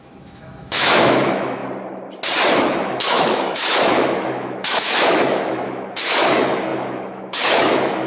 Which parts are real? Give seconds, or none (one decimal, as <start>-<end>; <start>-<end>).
1.6-2.6